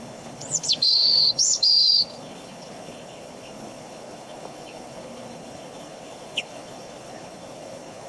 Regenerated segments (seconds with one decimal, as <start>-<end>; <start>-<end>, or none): 0.0-8.1